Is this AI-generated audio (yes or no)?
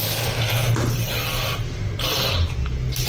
no